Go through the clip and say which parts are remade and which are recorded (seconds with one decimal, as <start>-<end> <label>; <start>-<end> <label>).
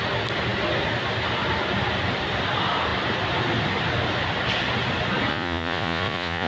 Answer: 0.0-5.3 recorded; 5.3-6.5 remade